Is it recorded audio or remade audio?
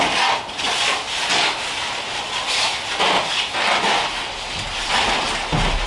recorded